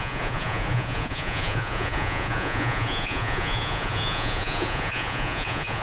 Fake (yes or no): yes